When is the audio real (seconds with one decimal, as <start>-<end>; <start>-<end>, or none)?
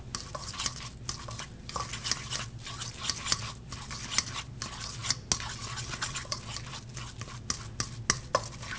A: 0.0-8.8